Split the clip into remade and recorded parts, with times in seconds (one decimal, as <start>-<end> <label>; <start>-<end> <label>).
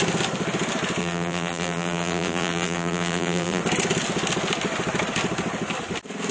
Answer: 0.0-1.0 recorded; 1.0-3.6 remade; 3.6-6.3 recorded